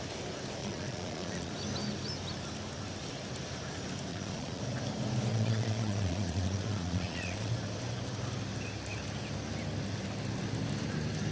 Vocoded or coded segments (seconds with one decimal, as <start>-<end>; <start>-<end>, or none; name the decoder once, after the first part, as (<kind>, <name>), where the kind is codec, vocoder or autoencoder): 0.6-1.5 (vocoder, Vocos); 4.1-4.6; 5.3-7.5